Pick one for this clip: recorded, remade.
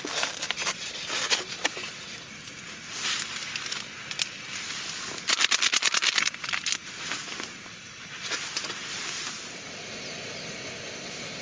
recorded